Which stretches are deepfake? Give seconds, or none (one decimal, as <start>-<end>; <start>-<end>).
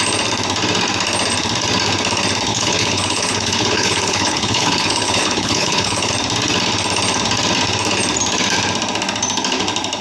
2.5-6.1